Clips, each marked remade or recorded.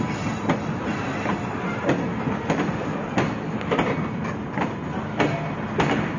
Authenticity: recorded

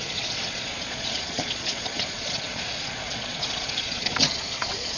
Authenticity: remade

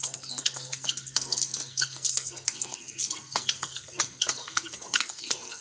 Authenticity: remade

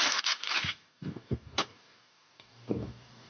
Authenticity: remade